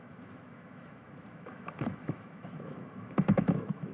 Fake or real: fake